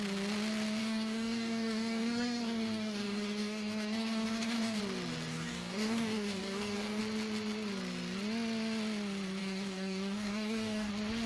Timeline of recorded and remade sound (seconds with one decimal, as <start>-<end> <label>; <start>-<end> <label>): 0.0-0.8 recorded; 0.8-4.8 remade; 4.8-5.3 recorded; 5.3-7.0 remade; 7.0-9.4 recorded; 9.4-10.9 remade; 10.9-11.3 recorded